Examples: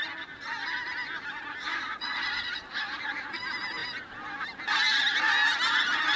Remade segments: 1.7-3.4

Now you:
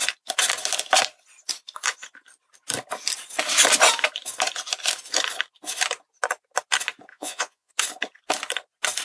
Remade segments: 7.1-7.7

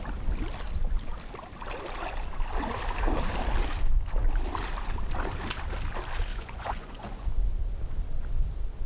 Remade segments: 6.3-7.3